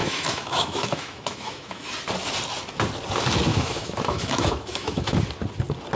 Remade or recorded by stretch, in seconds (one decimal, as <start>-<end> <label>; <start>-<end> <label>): 0.0-1.9 remade; 1.9-3.5 recorded; 3.5-5.2 remade; 5.2-6.0 recorded